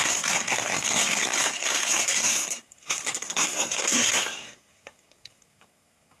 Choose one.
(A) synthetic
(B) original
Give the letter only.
A